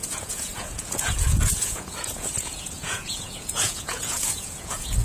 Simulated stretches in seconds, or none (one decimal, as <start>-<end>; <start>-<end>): 0.0-5.0